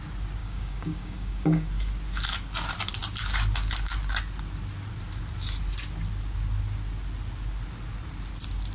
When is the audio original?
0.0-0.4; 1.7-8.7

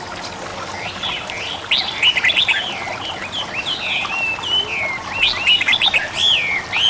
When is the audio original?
0.0-6.9

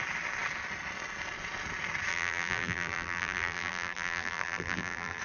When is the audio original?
0.0-2.1

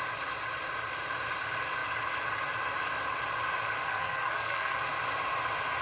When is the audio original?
0.0-3.8; 4.8-5.8